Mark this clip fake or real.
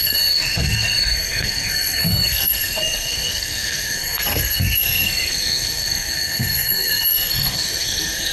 fake